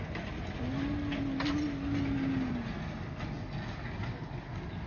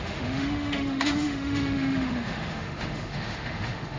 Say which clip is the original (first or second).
first